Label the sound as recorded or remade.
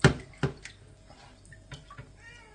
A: recorded